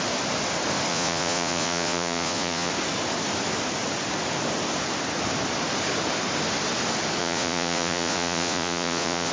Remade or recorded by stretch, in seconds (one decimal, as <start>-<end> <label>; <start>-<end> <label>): 0.0-0.9 recorded; 0.9-2.7 remade; 2.7-7.2 recorded; 7.2-9.3 remade